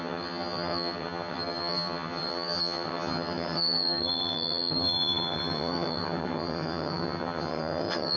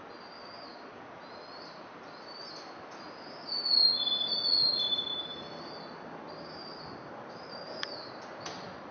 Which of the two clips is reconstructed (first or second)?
first